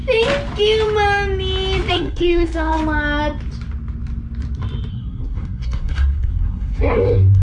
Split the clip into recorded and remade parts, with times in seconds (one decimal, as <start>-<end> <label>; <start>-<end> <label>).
0.0-1.9 recorded; 1.9-2.8 remade; 2.8-4.9 recorded; 4.9-7.4 remade